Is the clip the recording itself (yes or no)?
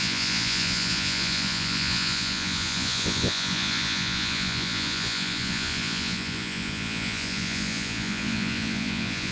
no